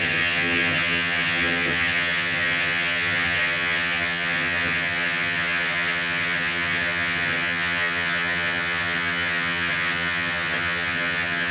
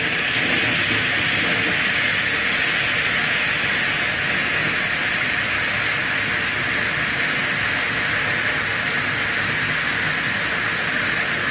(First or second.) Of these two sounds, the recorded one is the second